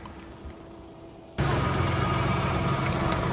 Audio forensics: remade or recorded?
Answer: recorded